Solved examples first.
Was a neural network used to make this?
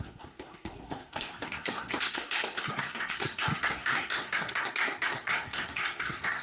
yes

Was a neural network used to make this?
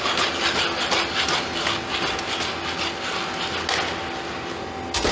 no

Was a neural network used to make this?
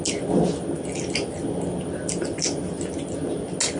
no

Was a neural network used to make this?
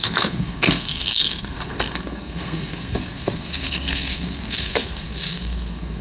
yes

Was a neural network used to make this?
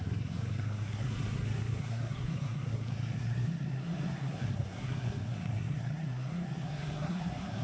yes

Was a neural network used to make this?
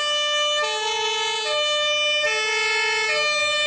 no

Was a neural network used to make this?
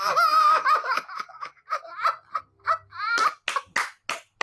no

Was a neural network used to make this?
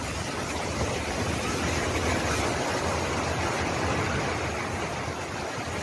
no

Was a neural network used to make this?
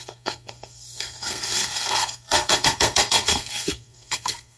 yes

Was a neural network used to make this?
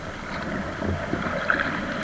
no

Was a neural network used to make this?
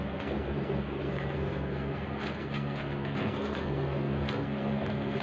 yes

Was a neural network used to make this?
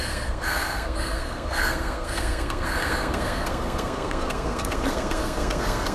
yes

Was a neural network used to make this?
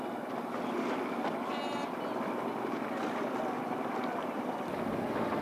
no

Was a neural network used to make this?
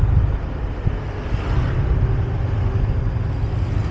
no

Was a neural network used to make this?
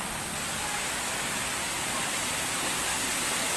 no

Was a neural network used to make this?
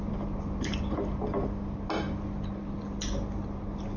no